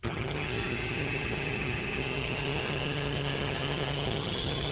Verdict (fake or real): fake